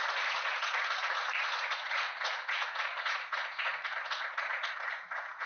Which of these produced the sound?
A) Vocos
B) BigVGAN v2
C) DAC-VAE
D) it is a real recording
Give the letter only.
A